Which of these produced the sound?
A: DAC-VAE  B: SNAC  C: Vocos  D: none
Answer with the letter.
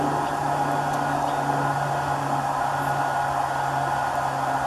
D